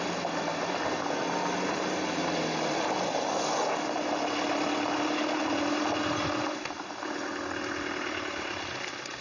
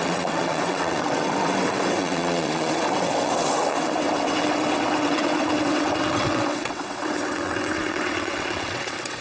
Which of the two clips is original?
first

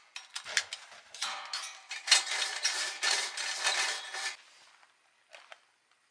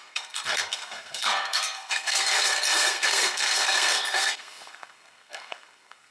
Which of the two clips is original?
first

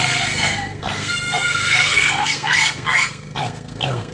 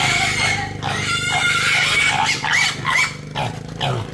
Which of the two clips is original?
second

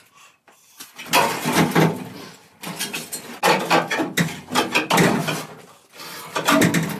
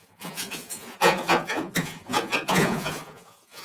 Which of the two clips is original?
first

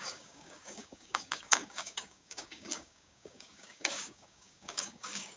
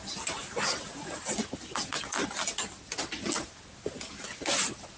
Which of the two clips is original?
second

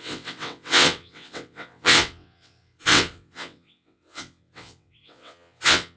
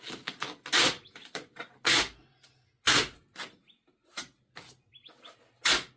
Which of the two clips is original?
second